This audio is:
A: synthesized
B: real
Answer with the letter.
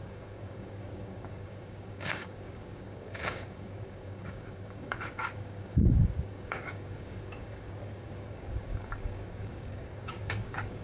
A